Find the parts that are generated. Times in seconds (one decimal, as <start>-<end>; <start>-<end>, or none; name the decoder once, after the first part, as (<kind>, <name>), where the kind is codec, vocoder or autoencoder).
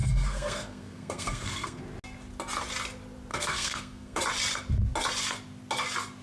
0.0-1.8 (codec, SNAC); 3.3-4.2